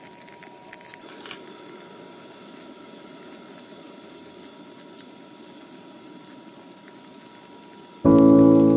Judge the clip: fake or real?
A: real